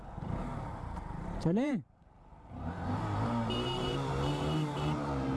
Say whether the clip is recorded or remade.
remade